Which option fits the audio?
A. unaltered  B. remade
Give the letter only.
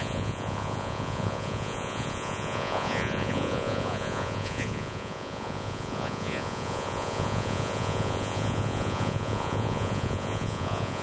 B